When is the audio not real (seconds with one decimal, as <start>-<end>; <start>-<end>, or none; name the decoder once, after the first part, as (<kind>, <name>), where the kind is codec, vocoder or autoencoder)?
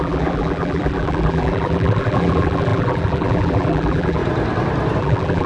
0.0-4.2 (vocoder, BigVGAN v2); 5.0-5.5